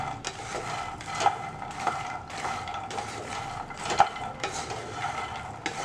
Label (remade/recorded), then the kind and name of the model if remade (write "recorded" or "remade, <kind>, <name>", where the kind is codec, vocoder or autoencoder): recorded